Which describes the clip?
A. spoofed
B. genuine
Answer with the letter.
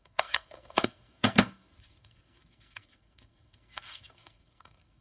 A